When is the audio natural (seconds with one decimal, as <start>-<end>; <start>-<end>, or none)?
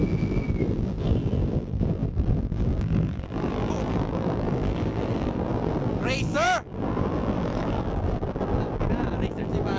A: none